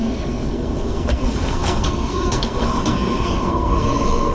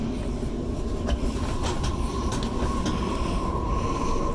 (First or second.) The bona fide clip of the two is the second